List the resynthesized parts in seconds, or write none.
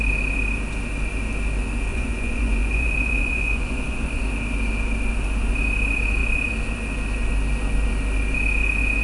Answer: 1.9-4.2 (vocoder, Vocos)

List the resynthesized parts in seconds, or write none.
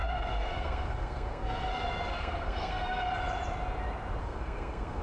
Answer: 0.0-3.0 (codec, SNAC); 4.2-5.0